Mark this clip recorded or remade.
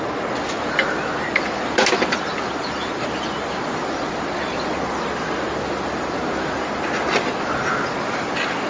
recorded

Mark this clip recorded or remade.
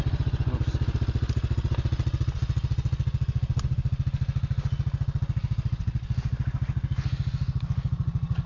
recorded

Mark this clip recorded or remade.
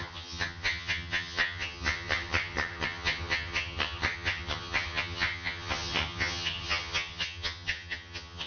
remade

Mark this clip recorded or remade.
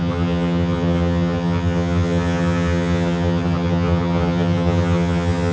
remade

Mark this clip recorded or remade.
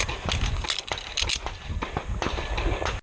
recorded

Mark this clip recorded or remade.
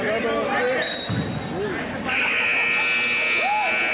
recorded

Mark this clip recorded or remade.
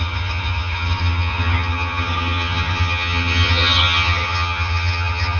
remade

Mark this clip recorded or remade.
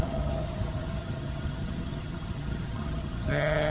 remade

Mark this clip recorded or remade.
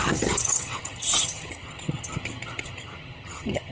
remade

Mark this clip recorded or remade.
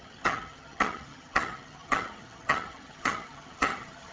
remade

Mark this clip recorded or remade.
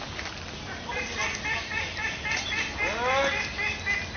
recorded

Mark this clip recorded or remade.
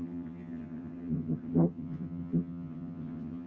remade